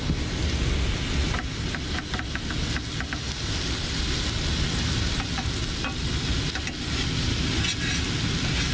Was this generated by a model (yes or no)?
no